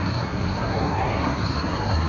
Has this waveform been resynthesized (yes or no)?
yes